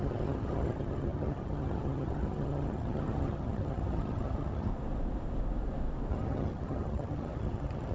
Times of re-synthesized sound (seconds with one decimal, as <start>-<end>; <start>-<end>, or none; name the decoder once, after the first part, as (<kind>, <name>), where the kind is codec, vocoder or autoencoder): 0.0-4.7 (vocoder, HiFi-GAN); 6.1-7.9